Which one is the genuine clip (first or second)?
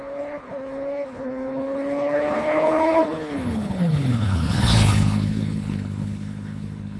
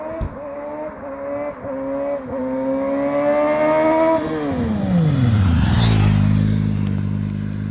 second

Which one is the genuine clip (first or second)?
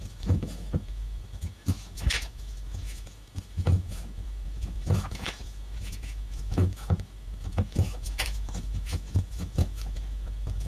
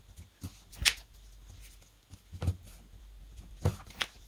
second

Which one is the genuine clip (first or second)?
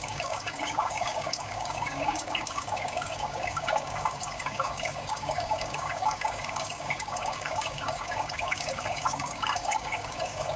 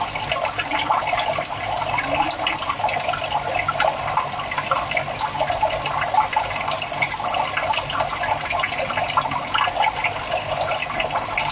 second